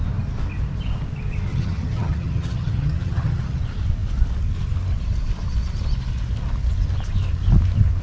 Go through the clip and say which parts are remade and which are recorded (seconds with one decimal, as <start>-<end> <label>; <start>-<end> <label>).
0.0-1.5 recorded; 1.5-3.6 remade; 3.6-8.0 recorded